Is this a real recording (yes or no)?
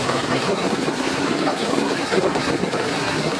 no